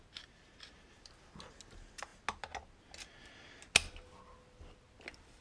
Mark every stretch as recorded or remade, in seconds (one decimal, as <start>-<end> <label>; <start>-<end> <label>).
0.0-5.4 recorded